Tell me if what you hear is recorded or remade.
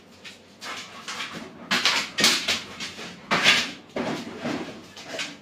recorded